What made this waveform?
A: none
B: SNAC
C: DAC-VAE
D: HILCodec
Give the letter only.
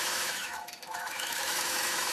C